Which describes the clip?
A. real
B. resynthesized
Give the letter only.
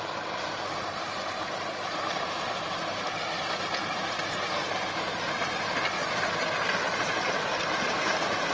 B